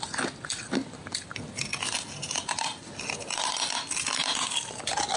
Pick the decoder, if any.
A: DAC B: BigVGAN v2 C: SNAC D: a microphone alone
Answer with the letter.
D